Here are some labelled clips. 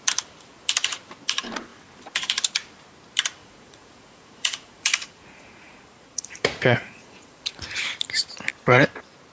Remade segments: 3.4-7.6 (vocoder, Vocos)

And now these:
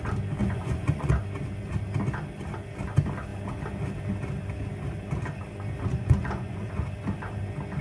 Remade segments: 0.4-1.1 (vocoder, Vocos); 5.9-6.7

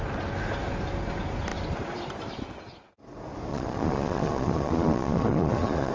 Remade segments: 3.5-5.9 (vocoder, Vocos)

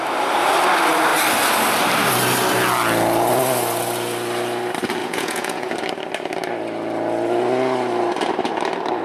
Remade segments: 5.0-5.7 (vocoder, Vocos)